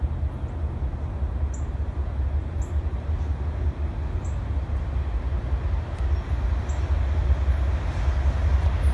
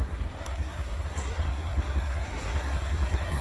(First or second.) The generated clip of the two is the second